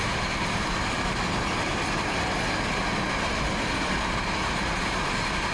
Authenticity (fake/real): real